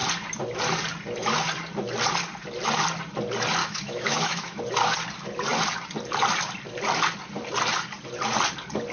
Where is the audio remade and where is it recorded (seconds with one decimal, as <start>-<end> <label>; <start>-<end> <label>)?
0.0-3.6 recorded; 3.6-4.6 remade; 4.6-8.9 recorded